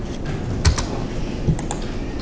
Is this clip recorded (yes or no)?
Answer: yes